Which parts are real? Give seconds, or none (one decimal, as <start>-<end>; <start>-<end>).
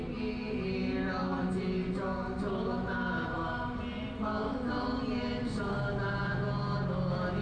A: 0.0-7.4